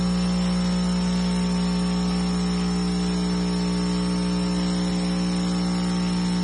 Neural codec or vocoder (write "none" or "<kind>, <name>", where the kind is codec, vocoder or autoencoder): none